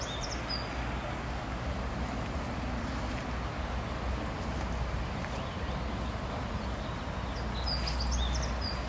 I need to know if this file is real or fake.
real